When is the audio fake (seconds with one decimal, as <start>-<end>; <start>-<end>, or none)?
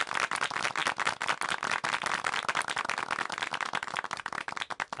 none